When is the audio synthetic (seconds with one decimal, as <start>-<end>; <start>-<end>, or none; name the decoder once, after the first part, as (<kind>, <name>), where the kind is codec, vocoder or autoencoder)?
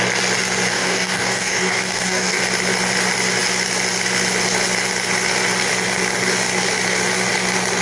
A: 0.7-2.4 (codec, DAC)